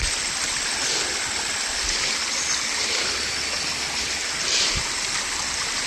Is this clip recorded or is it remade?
recorded